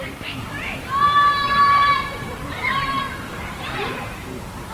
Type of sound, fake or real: fake